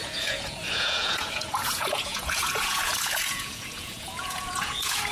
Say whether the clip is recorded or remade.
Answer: remade